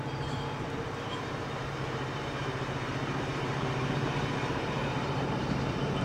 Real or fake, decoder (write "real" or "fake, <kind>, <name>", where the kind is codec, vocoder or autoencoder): fake, vocoder, BigVGAN v2